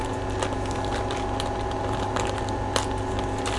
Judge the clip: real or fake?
real